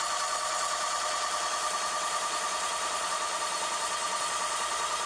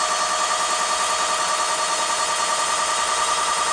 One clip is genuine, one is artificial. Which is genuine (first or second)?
second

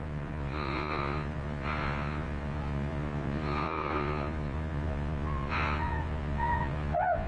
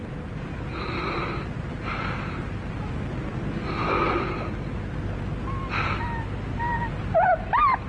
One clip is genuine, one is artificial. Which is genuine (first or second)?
second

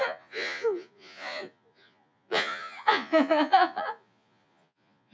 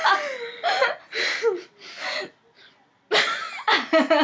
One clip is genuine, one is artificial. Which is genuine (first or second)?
second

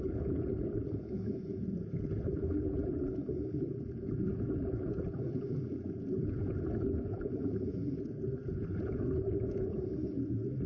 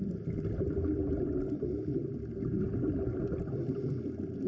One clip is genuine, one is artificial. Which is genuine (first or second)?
second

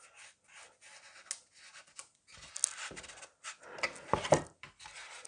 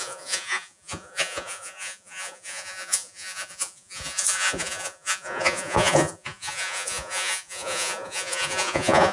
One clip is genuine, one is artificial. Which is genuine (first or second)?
first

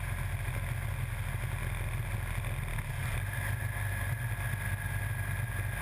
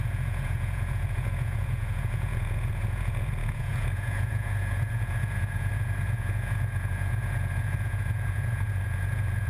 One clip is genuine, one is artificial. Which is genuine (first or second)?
first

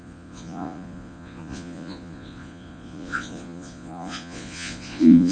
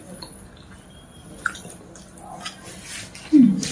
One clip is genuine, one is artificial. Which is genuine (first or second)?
second